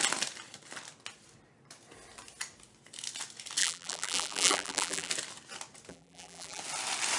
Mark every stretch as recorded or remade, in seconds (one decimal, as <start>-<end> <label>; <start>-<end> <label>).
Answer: 0.0-3.6 recorded; 3.6-5.1 remade; 5.1-5.9 recorded; 5.9-6.6 remade; 6.6-7.2 recorded